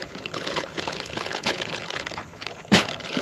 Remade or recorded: remade